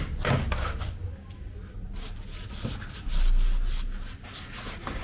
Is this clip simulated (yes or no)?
no